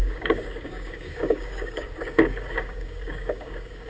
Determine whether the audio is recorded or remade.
remade